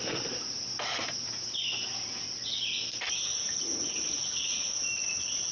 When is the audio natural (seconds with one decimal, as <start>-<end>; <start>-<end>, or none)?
0.0-0.5; 1.3-3.3; 4.3-5.5